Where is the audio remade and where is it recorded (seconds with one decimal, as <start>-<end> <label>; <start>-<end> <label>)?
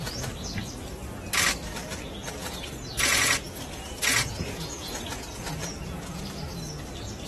0.0-2.4 recorded; 2.4-6.2 remade; 6.2-7.3 recorded